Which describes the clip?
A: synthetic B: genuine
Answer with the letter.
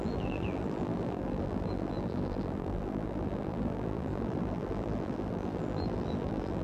A